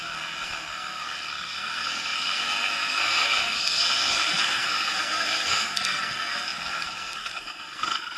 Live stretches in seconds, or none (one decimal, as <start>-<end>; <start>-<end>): none